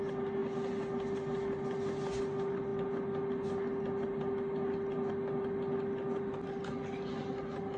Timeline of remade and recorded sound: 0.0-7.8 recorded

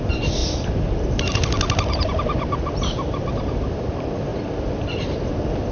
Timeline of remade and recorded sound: 0.0-5.7 recorded